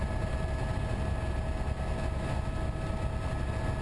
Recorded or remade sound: recorded